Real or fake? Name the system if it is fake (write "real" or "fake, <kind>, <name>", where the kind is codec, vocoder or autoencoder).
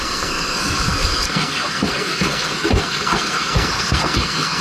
fake, codec, SNAC